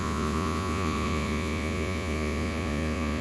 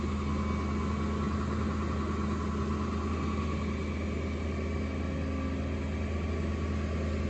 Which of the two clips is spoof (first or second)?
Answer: first